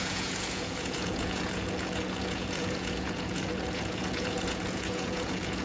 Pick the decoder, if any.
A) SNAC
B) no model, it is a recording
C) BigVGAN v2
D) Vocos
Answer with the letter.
D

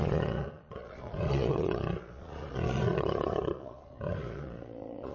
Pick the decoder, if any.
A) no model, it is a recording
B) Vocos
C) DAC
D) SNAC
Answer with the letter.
B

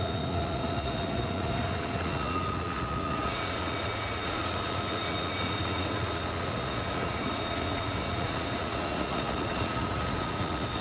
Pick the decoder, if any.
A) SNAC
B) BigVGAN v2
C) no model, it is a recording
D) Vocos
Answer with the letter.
D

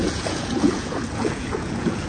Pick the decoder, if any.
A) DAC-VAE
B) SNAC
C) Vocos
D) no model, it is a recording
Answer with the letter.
C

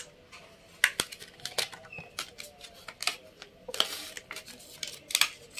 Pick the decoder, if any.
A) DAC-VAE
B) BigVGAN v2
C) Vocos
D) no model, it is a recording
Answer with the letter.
D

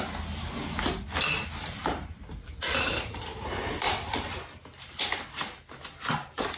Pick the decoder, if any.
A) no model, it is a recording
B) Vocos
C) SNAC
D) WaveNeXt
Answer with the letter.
A